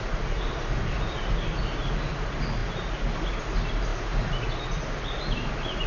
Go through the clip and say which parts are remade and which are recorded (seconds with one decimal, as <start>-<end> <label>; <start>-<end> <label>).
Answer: 0.0-5.9 recorded